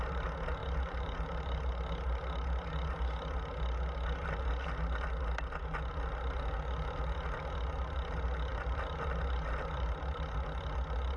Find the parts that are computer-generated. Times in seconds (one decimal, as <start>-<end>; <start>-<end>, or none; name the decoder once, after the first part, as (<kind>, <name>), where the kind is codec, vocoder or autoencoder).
0.6-1.7 (vocoder, BigVGAN v2); 8.5-10.0